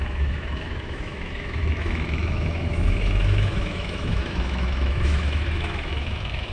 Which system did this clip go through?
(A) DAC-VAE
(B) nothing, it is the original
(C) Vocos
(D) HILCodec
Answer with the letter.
A